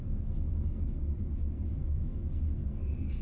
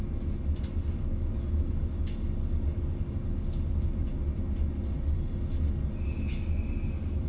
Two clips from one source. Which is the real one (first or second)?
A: second